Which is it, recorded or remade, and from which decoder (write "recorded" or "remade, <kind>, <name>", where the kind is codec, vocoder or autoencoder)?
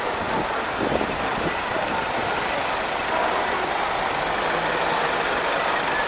recorded